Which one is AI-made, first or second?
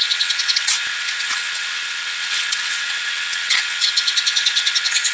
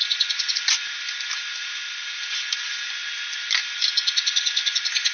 first